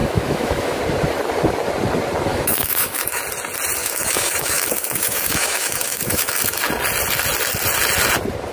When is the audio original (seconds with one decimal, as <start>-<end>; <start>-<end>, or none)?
0.8-2.3; 3.2-3.8; 6.6-8.5